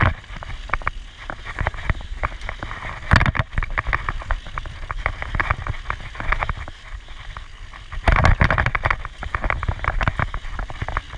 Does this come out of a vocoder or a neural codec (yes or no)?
no